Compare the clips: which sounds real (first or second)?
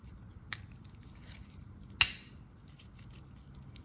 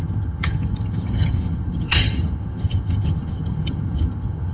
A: first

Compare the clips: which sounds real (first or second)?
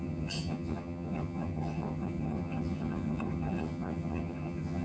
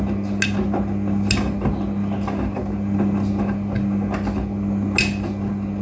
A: second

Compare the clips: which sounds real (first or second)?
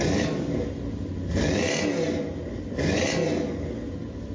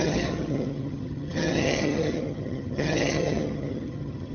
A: first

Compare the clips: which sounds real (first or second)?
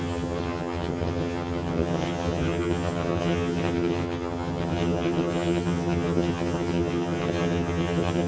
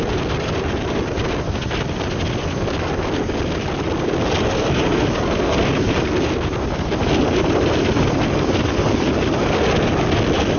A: second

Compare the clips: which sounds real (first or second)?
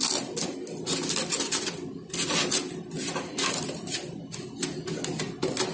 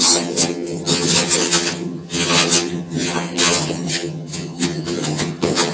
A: first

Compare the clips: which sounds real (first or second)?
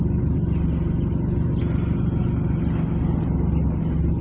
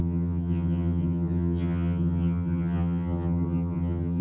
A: first